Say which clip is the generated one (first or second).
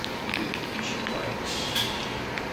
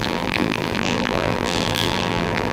second